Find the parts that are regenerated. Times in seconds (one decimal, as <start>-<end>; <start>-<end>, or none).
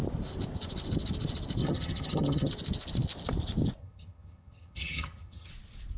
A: 1.6-2.5; 3.8-5.5